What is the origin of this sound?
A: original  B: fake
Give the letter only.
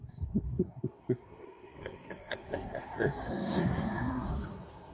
B